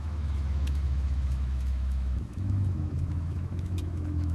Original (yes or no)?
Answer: no